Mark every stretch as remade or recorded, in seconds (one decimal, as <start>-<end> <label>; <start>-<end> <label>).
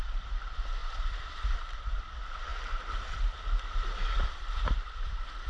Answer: 0.0-5.5 remade